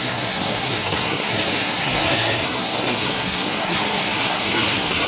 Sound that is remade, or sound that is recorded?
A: remade